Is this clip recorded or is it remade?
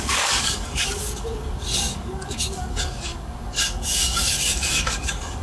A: remade